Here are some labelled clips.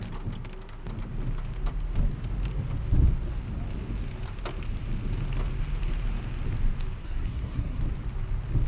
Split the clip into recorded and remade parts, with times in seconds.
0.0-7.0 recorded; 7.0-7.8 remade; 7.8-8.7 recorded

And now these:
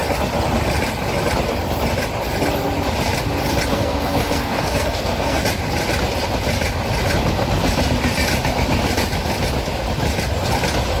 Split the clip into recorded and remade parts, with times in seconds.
0.0-3.7 recorded; 3.7-5.4 remade; 5.4-11.0 recorded

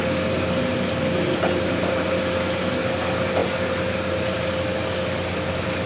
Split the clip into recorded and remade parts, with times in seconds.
0.0-5.9 recorded

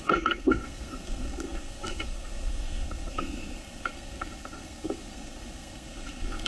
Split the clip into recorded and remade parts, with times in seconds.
0.0-6.5 remade

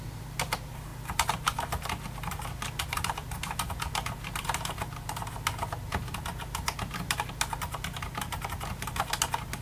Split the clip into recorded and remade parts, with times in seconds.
0.0-9.6 recorded